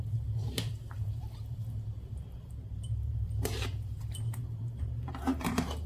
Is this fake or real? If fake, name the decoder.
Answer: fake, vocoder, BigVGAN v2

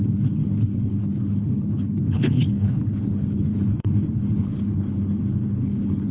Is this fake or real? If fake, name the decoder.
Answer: fake, codec, HILCodec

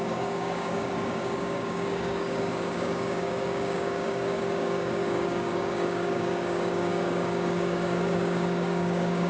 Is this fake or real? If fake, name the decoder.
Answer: fake, codec, DAC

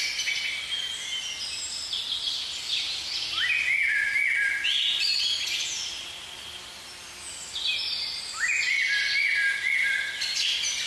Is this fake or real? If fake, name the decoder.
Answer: real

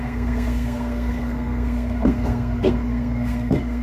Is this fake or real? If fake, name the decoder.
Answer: fake, codec, SNAC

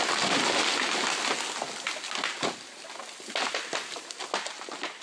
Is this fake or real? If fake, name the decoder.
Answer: real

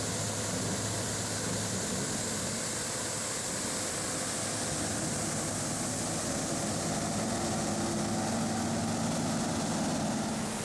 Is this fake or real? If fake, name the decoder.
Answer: real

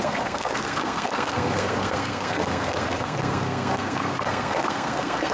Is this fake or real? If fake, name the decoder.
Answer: fake, codec, SNAC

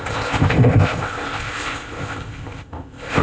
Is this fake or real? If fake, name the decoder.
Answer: fake, codec, ZipCodec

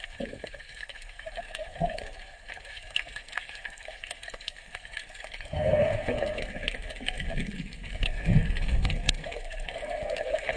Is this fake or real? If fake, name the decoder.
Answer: fake, codec, SNAC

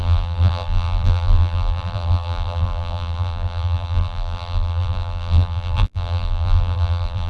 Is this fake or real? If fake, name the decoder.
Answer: fake, vocoder, BigVGAN v2